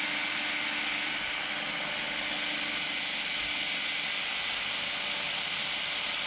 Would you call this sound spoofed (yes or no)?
no